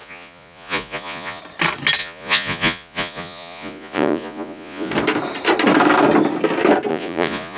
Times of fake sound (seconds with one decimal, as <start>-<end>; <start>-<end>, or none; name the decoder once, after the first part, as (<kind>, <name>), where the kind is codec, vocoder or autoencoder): 0.0-1.4 (vocoder, Vocos); 2.0-4.9; 6.9-7.6